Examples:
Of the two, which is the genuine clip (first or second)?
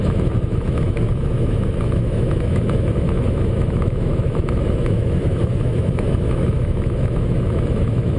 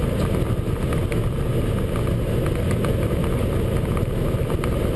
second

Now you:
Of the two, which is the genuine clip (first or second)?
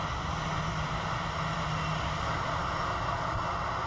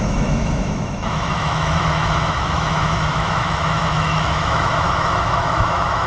first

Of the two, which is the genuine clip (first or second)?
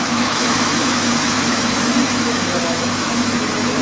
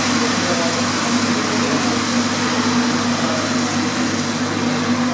second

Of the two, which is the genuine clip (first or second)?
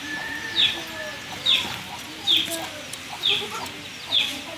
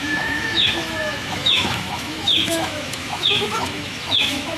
first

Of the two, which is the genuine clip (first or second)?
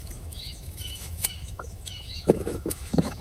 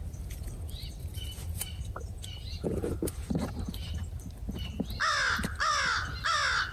second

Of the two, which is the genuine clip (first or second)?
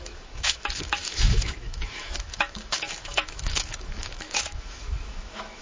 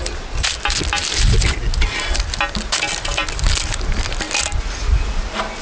second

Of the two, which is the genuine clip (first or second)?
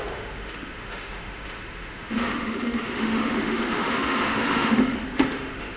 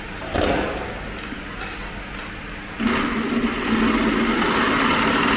second